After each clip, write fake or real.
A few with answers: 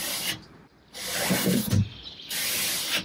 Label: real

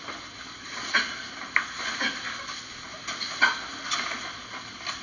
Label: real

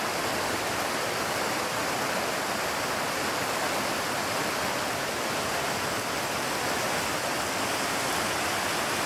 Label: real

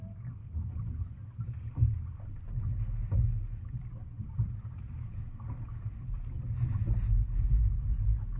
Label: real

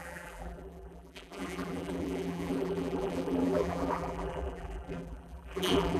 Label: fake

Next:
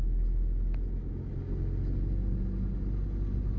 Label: real